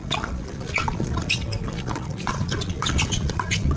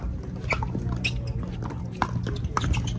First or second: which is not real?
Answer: first